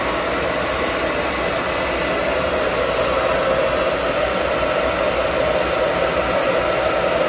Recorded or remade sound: recorded